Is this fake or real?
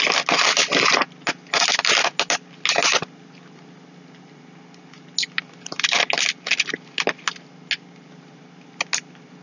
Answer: real